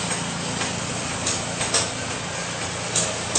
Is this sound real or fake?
real